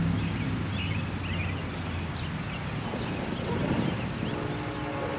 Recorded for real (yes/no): yes